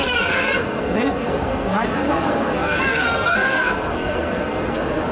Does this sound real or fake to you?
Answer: fake